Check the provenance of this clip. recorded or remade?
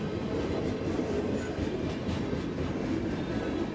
recorded